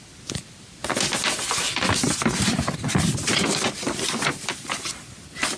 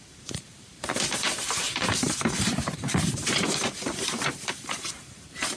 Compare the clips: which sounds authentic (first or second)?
first